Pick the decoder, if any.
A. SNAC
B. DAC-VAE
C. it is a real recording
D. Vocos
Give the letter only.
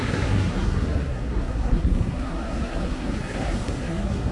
A